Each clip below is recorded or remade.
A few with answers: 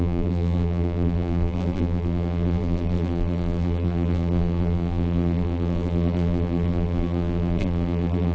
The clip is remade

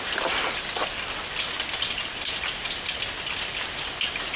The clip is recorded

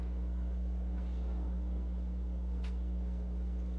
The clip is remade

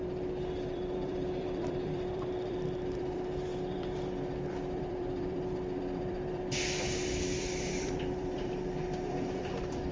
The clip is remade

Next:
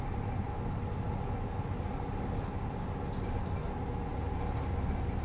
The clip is recorded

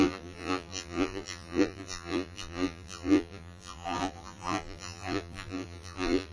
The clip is remade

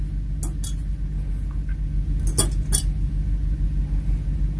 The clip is recorded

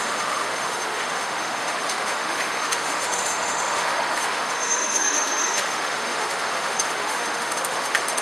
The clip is remade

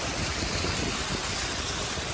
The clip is recorded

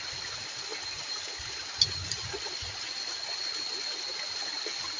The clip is recorded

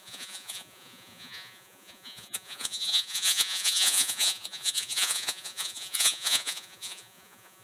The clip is remade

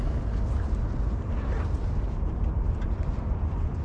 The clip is recorded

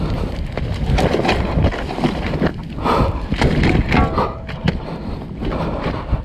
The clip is recorded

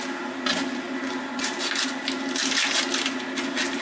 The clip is recorded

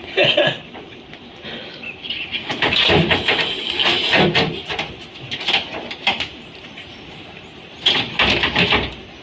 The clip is recorded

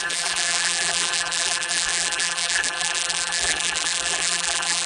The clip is remade